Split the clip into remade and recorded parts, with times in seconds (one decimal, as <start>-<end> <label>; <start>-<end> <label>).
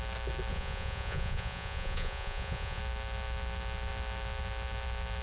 0.0-0.5 recorded; 0.5-2.8 remade; 2.8-5.2 recorded